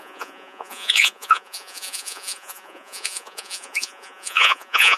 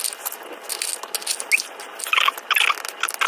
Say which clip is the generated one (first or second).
first